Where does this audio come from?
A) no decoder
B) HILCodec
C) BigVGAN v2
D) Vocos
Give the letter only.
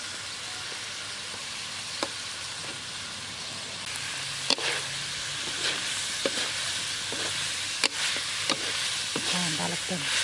A